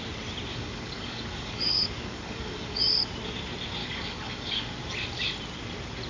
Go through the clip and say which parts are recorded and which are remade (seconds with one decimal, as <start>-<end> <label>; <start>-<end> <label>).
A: 0.0-0.5 recorded; 0.5-2.8 remade; 2.8-3.8 recorded; 3.8-4.7 remade; 4.7-6.1 recorded